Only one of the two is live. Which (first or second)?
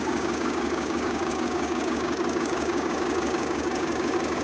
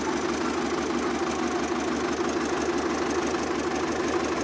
second